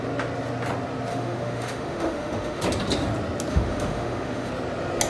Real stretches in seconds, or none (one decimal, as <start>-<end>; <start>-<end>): 0.0-1.1; 2.6-3.5; 4.5-5.1